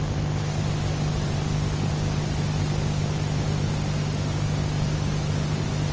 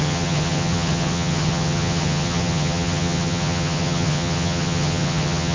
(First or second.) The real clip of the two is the first